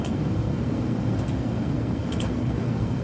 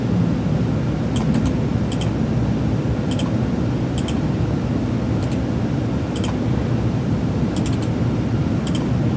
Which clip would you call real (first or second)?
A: second